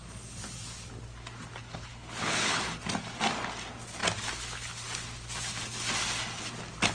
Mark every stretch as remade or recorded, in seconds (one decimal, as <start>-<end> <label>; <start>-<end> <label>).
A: 0.0-1.6 recorded; 1.6-2.8 remade; 2.8-6.9 recorded